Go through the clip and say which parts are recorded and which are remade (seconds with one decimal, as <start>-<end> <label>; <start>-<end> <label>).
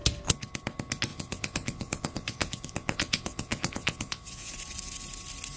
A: 0.0-1.1 recorded; 1.1-4.5 remade; 4.5-5.6 recorded